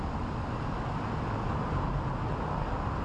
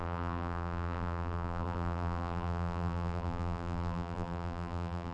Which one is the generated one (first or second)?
second